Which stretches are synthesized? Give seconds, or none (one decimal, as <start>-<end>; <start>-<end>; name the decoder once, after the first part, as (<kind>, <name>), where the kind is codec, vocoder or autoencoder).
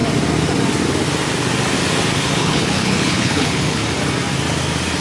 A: 2.4-3.8 (codec, HILCodec)